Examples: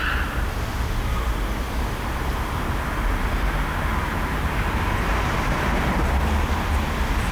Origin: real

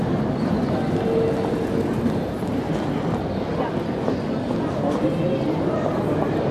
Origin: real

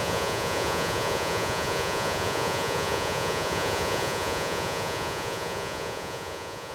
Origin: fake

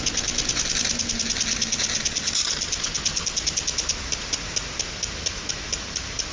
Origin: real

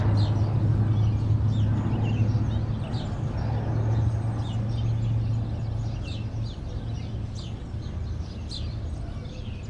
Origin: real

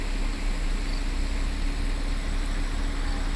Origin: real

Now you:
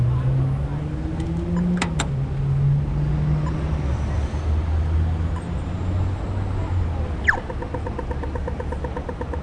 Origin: real